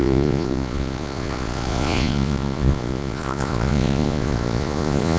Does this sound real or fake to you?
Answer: fake